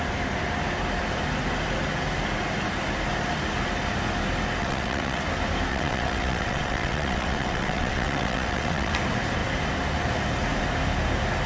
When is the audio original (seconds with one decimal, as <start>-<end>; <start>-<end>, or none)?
0.0-4.6; 5.2-5.7; 8.9-11.5